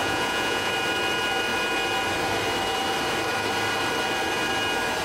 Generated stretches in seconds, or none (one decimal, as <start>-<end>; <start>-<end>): 0.0-0.7